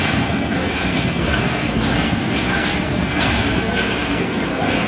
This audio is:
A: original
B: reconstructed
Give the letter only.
B